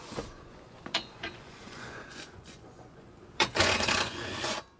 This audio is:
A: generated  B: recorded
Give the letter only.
A